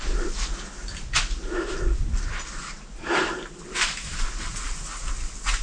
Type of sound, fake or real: real